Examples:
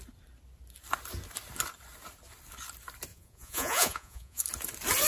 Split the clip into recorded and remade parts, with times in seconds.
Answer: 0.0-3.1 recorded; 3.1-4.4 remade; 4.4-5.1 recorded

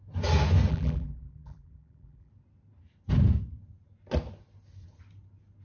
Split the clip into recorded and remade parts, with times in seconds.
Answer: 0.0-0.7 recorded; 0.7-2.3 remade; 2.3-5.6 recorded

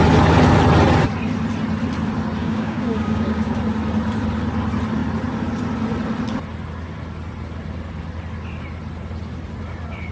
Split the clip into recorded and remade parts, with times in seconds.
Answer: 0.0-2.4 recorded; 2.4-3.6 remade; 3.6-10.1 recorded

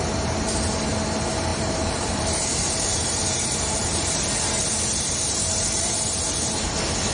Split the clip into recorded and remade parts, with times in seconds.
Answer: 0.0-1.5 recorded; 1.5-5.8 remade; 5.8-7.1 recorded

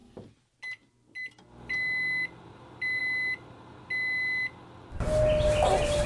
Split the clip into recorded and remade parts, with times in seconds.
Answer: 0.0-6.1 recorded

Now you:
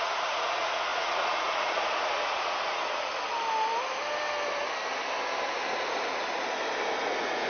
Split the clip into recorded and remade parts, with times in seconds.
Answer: 0.0-3.1 remade; 3.1-5.7 recorded; 5.7-6.2 remade; 6.2-7.0 recorded; 7.0-7.5 remade

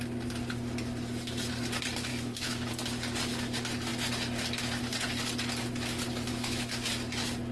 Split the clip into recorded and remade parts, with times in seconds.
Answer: 0.0-2.1 recorded; 2.1-2.7 remade; 2.7-6.3 recorded; 6.3-6.9 remade; 6.9-7.5 recorded